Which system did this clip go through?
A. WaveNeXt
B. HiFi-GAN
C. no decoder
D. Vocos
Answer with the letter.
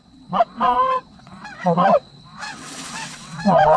A